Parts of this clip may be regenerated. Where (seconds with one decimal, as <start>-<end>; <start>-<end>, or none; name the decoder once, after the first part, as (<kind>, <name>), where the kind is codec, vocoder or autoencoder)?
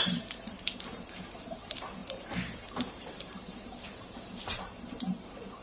0.0-5.6 (vocoder, BigVGAN v2)